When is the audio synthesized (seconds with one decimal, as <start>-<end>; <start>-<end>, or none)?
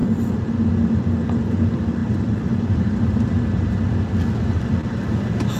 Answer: 2.0-3.3; 4.4-5.0